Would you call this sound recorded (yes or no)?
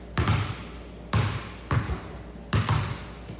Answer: yes